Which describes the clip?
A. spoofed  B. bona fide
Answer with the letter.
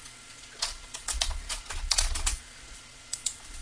A